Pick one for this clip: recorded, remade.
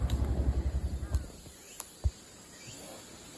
recorded